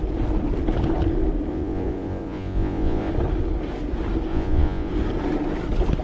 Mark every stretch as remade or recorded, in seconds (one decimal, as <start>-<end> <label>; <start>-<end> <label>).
0.0-1.5 recorded; 1.5-3.1 remade; 3.1-4.3 recorded; 4.3-4.9 remade; 4.9-6.0 recorded